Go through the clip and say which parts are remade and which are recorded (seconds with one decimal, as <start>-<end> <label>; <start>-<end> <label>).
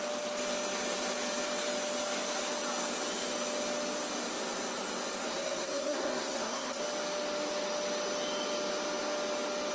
0.0-5.2 recorded; 5.2-6.8 remade; 6.8-9.7 recorded